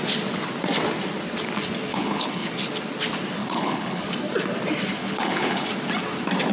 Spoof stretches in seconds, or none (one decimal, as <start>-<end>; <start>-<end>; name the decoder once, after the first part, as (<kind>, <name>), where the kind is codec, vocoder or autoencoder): 1.9-2.5 (codec, HILCodec); 3.4-4.0; 5.0-5.7